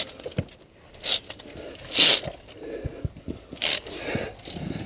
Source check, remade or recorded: recorded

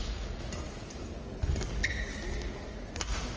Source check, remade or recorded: recorded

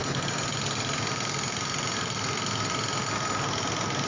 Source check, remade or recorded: recorded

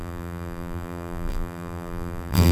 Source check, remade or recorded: remade